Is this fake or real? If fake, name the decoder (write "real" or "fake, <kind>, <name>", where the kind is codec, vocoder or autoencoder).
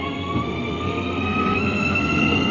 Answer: fake, codec, SNAC